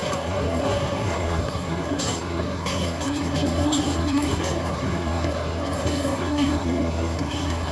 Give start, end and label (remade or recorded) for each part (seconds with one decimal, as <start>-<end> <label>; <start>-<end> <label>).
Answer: 0.0-7.7 remade